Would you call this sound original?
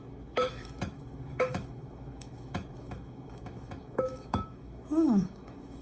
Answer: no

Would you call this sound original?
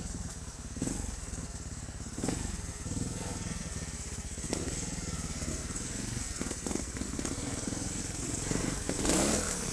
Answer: no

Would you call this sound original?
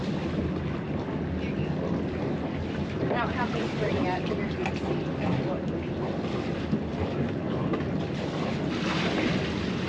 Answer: yes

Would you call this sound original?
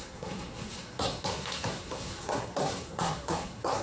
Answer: no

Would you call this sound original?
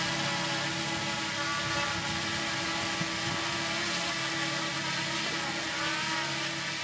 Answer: yes